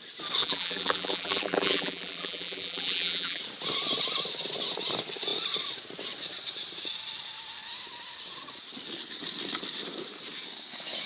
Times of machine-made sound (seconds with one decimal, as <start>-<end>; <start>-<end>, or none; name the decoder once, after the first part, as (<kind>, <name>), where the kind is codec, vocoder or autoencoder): 0.4-3.4 (vocoder, BigVGAN v2)